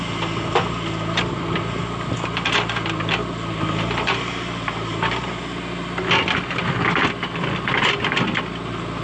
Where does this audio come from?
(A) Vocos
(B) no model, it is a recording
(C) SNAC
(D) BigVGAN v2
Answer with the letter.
B